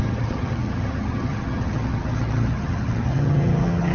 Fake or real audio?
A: fake